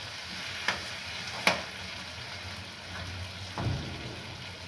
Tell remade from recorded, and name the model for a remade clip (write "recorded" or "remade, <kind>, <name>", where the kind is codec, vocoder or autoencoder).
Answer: recorded